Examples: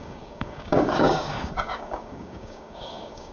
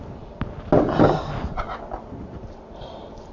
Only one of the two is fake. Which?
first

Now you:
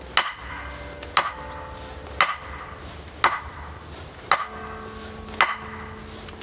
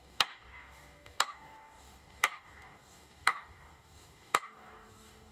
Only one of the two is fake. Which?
second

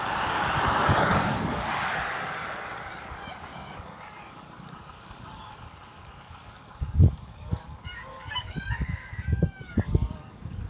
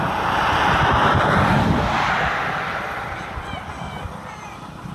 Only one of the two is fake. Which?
first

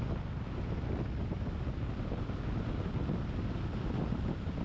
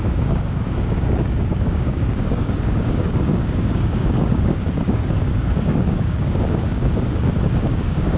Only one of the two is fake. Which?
second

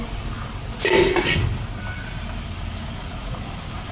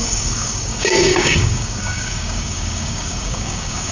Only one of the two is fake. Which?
second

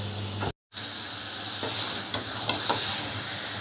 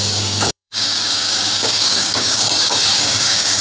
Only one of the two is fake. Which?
second